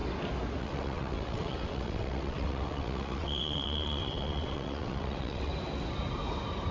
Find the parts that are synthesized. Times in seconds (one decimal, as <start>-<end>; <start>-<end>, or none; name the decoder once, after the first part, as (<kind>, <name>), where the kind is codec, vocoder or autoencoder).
0.6-5.5 (vocoder, WaveNeXt)